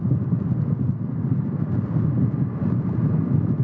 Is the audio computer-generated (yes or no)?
no